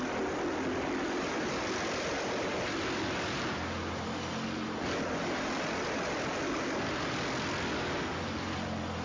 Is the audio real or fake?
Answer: real